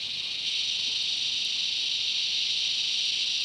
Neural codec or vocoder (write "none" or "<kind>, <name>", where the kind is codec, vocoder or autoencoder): none